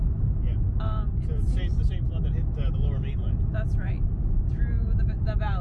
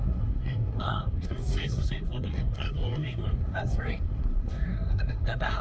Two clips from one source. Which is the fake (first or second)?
second